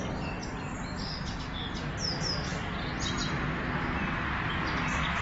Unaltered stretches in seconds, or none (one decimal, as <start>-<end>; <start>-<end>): 0.0-5.2